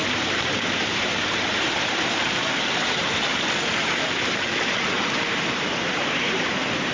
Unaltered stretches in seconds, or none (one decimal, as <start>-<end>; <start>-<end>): 3.3-4.1